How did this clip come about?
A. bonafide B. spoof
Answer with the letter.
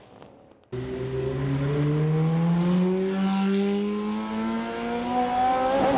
A